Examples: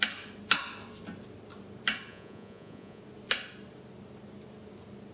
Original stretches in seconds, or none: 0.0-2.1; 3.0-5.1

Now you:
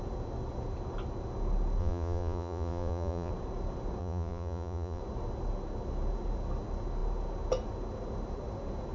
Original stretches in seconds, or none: 0.0-1.8; 3.3-4.0; 5.0-8.9

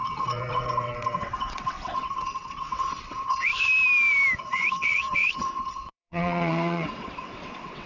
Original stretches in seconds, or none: 3.5-4.4

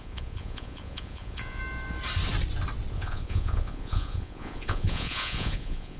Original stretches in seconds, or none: 1.6-2.9

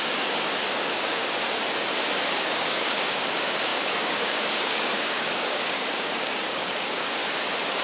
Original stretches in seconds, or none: 1.2-2.2; 7.2-7.8

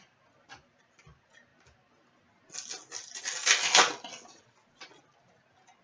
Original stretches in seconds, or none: 0.0-5.8